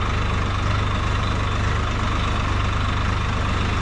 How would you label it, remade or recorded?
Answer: recorded